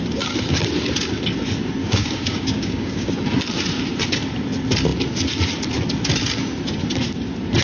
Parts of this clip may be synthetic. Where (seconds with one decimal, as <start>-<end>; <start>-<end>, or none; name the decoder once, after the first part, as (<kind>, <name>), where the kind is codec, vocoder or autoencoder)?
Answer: 1.8-3.1 (codec, DAC)